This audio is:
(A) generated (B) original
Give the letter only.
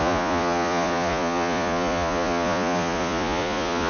A